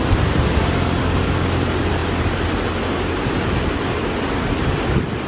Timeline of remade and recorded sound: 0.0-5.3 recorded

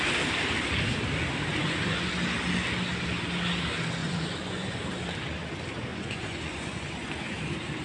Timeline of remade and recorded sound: 0.0-1.6 recorded; 1.6-2.1 remade; 2.1-4.0 recorded; 4.0-4.8 remade; 4.8-5.9 recorded; 5.9-7.1 remade; 7.1-7.8 recorded